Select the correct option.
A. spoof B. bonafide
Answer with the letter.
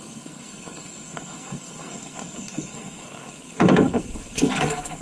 A